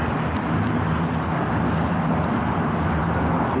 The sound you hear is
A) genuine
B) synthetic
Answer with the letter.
B